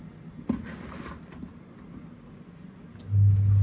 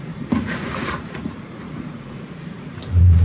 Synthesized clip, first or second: second